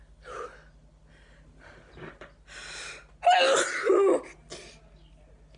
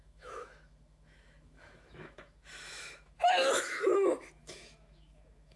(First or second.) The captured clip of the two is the first